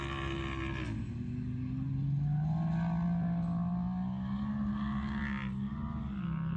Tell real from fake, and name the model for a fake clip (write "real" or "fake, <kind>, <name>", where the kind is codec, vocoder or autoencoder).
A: real